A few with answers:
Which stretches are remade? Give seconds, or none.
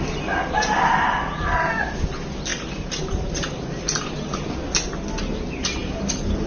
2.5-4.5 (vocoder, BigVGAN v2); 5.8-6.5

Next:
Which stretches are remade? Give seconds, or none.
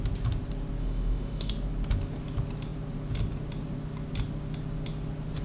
0.8-1.5 (autoencoder, DAC-VAE)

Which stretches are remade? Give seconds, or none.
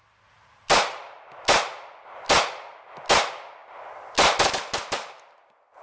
none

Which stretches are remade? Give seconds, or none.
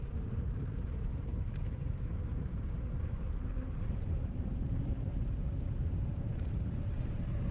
0.0-2.3 (vocoder, BigVGAN v2); 3.9-6.3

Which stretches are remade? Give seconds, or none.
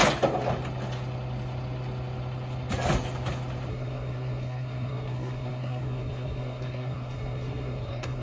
3.7-8.2 (codec, SNAC)